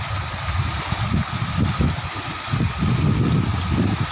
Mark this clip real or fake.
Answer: real